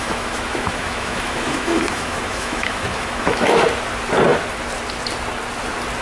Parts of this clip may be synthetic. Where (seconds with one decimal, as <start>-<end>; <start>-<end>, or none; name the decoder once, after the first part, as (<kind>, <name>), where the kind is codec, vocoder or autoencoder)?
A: 0.0-3.6 (autoencoder, DAC-VAE)